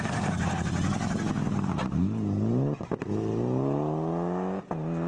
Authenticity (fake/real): real